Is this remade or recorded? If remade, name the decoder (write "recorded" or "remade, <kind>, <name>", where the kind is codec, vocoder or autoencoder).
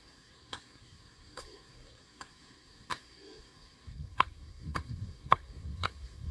remade, codec, SNAC